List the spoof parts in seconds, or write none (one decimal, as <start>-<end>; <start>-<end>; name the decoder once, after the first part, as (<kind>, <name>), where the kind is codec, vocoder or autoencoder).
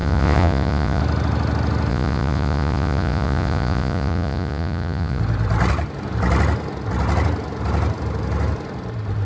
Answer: 0.0-1.0 (vocoder, Vocos); 1.9-5.2